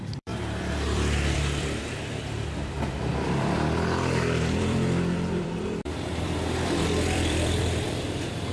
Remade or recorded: remade